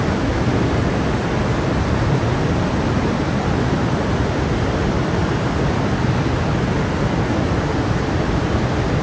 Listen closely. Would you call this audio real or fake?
real